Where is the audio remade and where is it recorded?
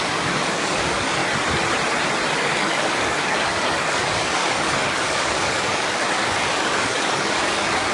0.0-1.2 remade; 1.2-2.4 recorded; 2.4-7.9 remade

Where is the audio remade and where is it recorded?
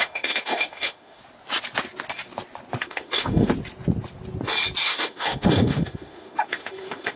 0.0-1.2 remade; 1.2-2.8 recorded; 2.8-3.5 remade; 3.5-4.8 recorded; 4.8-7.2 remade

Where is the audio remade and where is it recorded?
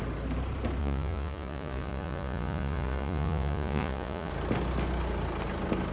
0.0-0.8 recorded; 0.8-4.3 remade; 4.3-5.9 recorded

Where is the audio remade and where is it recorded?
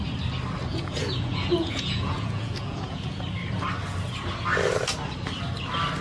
0.0-0.7 recorded; 0.7-3.2 remade; 3.2-6.0 recorded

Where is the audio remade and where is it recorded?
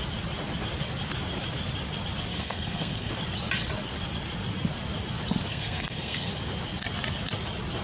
0.0-2.3 recorded; 2.3-3.1 remade; 3.1-5.5 recorded; 5.5-6.3 remade; 6.3-7.8 recorded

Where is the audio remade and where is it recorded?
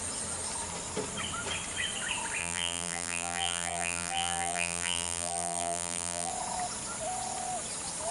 0.0-2.4 recorded; 2.4-6.3 remade; 6.3-8.1 recorded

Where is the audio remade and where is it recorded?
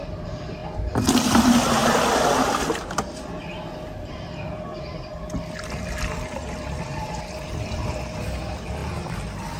0.0-9.6 recorded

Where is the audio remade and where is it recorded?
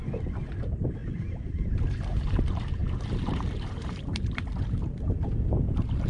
0.0-6.1 remade